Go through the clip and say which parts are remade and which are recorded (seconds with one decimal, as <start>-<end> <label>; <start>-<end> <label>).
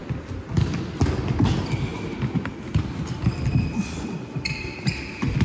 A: 0.0-5.4 recorded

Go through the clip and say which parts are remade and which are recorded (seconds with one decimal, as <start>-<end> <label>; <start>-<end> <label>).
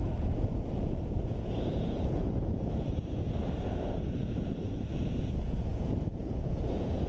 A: 0.0-3.4 remade; 3.4-4.2 recorded; 4.2-7.1 remade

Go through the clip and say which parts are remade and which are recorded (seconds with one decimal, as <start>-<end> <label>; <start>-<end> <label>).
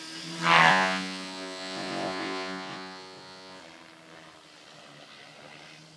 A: 0.0-0.7 recorded; 0.7-3.6 remade; 3.6-6.0 recorded